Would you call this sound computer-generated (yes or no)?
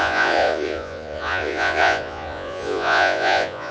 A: yes